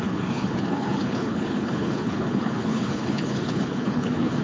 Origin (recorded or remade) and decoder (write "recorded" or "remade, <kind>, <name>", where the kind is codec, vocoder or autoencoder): remade, codec, HILCodec